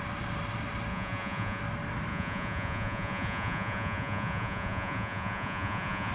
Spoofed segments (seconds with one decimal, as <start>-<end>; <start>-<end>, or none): 0.9-1.6; 2.1-6.1